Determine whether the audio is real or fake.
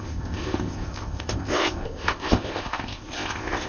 fake